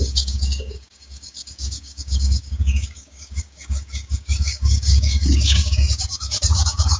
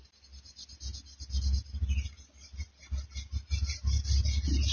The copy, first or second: first